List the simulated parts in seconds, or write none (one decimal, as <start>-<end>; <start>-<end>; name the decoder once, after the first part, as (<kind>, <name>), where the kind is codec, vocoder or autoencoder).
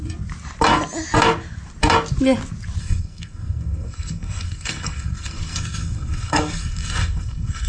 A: 2.8-7.7 (codec, SNAC)